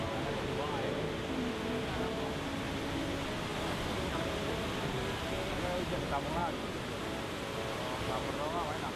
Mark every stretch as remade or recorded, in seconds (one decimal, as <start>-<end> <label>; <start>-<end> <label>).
0.0-9.0 recorded